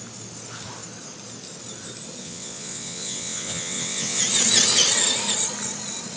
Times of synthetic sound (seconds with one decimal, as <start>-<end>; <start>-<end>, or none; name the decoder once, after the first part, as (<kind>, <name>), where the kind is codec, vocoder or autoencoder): 2.2-4.2 (vocoder, WaveNeXt)